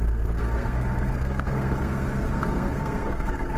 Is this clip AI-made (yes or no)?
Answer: yes